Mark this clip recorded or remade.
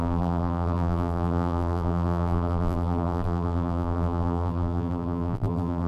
remade